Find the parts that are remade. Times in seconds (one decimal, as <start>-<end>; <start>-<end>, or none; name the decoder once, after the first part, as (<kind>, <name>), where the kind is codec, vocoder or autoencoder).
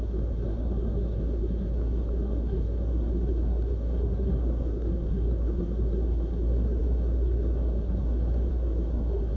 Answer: 0.0-9.4 (codec, SNAC)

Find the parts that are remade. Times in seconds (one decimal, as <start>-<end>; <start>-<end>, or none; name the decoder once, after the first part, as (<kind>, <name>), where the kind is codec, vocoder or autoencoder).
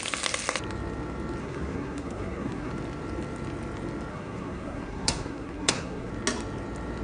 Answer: 1.4-2.7 (codec, SNAC); 4.1-6.1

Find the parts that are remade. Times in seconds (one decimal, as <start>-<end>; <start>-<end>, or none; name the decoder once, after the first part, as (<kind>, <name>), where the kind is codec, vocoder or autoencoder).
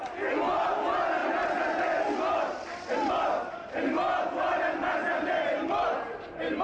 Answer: 1.2-3.1 (vocoder, BigVGAN v2); 5.0-6.6